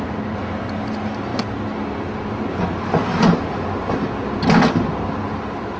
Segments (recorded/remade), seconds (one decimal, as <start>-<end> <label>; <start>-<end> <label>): 0.0-5.8 recorded